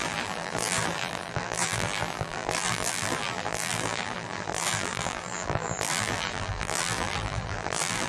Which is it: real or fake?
fake